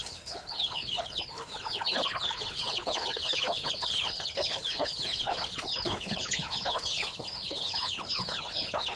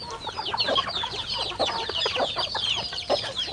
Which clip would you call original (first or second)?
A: second